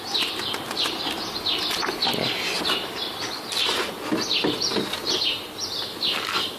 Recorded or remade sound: recorded